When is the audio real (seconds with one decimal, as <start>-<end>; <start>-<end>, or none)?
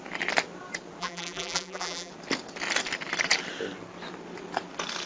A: 0.0-1.0; 2.1-5.1